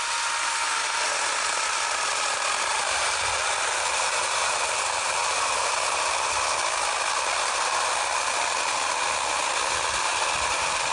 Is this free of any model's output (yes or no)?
yes